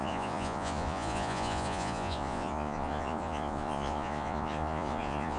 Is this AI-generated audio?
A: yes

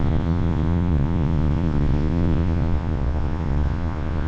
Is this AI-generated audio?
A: yes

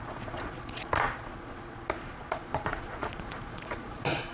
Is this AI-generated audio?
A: yes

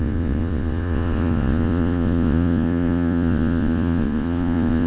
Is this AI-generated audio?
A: yes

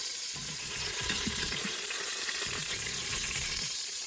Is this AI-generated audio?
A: yes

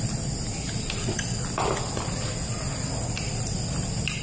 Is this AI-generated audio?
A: no